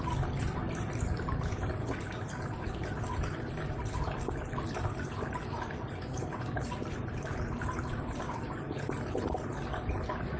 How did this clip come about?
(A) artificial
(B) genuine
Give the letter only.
B